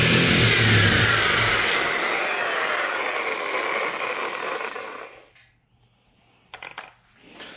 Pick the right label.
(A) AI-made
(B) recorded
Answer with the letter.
B